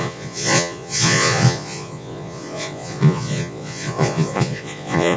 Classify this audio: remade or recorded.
remade